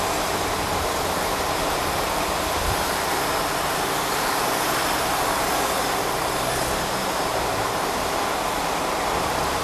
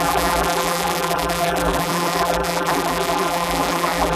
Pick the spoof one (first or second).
second